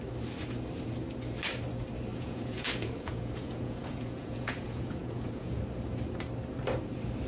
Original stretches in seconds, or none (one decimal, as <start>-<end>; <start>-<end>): 0.0-2.1; 5.6-7.3